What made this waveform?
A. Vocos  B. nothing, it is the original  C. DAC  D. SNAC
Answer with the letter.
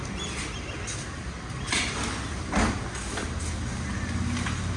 B